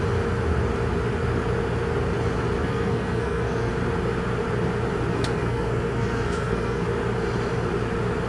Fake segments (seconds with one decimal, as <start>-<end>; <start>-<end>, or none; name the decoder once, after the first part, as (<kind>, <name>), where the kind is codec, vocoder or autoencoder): 2.6-3.7 (codec, SNAC); 5.1-6.9